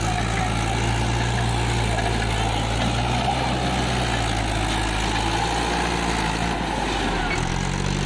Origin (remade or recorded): recorded